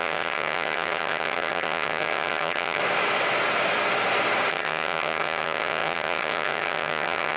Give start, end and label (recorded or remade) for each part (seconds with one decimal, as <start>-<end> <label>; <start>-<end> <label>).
0.0-2.8 remade; 2.8-4.5 recorded; 4.5-7.4 remade